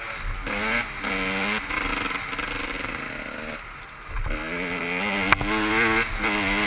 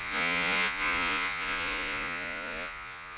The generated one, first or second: second